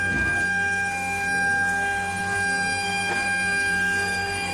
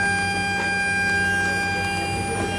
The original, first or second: second